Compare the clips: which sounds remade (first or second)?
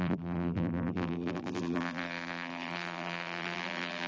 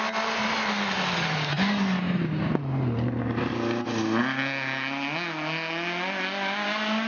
first